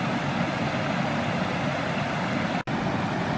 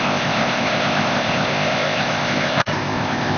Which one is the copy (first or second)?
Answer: second